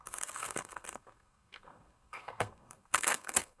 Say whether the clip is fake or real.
fake